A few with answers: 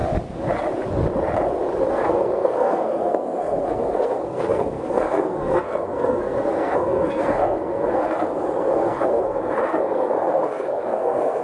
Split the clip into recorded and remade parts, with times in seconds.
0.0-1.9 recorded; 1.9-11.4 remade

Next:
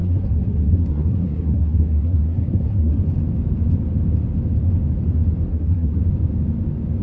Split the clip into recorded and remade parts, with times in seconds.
0.0-3.0 remade; 3.0-5.5 recorded; 5.5-6.0 remade; 6.0-7.0 recorded

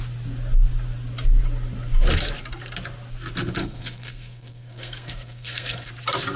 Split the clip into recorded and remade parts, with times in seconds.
0.0-3.6 recorded; 3.6-5.9 remade; 5.9-6.4 recorded